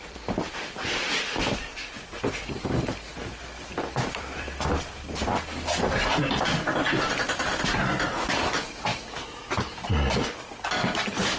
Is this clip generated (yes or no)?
yes